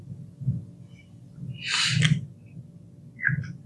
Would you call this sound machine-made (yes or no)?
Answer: no